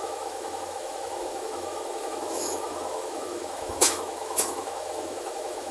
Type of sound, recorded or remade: remade